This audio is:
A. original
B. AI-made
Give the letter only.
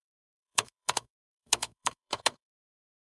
B